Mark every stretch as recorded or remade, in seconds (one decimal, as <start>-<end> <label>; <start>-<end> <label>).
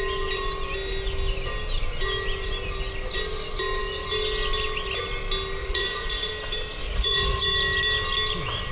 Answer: 0.0-5.6 recorded; 5.6-6.3 remade; 6.3-6.8 recorded; 6.8-7.4 remade; 7.4-8.7 recorded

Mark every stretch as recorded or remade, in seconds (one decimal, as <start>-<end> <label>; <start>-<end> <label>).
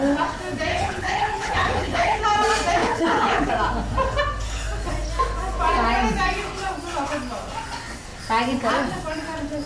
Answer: 0.0-0.7 recorded; 0.7-2.2 remade; 2.2-2.8 recorded; 2.8-3.5 remade; 3.5-9.7 recorded